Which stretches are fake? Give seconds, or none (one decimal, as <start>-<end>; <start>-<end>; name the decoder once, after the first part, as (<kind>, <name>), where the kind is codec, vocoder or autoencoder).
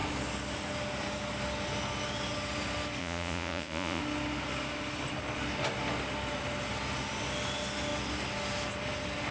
3.0-4.0 (vocoder, Vocos)